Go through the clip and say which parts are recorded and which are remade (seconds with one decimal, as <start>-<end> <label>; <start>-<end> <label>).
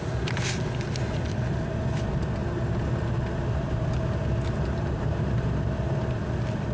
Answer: 0.0-6.7 recorded